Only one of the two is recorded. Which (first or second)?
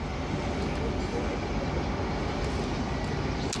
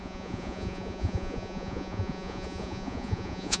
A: first